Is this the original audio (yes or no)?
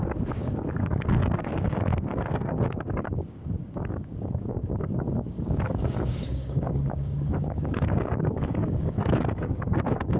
no